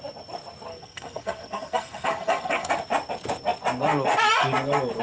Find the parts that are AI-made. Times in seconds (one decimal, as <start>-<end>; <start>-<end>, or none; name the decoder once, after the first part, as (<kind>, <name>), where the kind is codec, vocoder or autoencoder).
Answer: 0.7-2.7 (codec, SNAC)

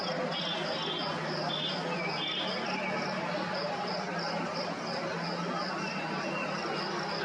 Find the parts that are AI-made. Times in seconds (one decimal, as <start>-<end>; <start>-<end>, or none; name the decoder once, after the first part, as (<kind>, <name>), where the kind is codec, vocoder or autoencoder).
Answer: none